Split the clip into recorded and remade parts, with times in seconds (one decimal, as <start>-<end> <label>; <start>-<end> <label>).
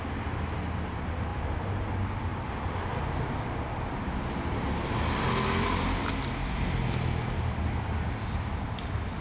0.0-9.2 recorded